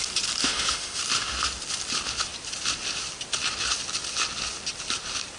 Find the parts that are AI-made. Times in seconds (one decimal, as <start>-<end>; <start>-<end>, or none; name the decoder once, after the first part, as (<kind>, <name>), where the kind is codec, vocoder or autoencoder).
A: 0.4-1.0 (autoencoder, DAC-VAE)